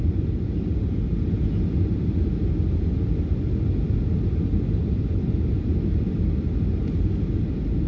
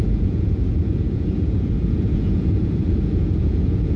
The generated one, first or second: second